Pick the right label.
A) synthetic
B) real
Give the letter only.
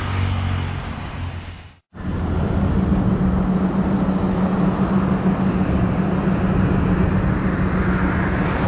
B